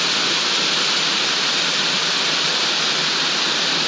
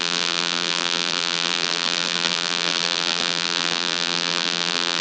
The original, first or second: first